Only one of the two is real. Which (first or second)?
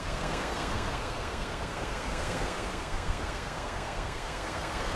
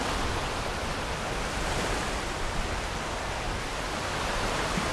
second